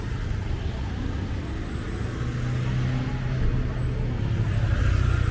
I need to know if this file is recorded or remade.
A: recorded